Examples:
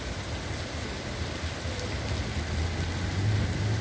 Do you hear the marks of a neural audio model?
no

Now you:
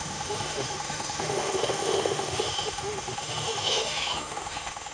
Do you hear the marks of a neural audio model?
yes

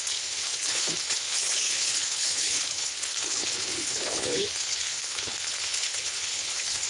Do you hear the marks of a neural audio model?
yes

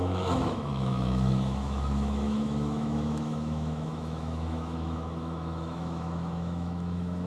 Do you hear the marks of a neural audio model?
yes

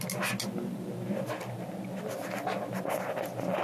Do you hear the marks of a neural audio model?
no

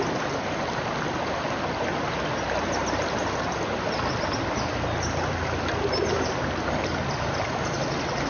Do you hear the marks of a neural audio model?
no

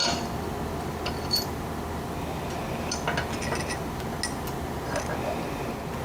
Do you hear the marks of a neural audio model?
no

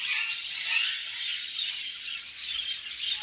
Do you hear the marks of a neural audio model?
no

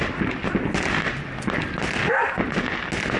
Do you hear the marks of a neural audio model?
no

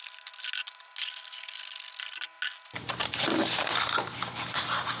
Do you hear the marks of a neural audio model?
no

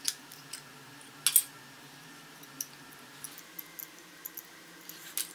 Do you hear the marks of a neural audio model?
no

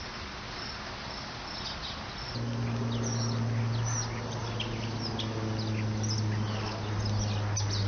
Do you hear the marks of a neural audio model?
no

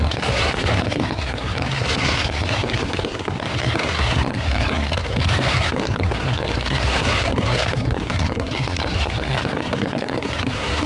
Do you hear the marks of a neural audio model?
yes